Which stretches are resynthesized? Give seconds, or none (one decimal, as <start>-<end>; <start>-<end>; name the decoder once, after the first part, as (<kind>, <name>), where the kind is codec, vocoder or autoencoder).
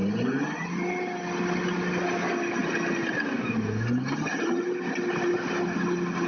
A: none